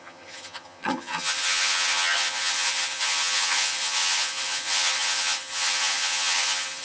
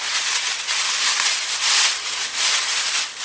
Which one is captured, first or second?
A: second